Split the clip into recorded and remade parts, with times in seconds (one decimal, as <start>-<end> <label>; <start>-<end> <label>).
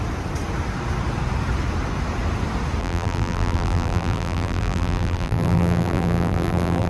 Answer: 0.0-2.8 recorded; 2.8-6.9 remade